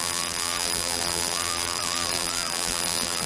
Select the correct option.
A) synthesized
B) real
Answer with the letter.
A